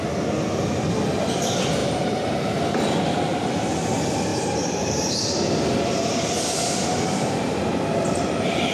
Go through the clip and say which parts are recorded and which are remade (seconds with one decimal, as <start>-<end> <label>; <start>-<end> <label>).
0.0-1.8 recorded; 1.8-2.8 remade; 2.8-4.3 recorded; 4.3-5.2 remade; 5.2-8.7 recorded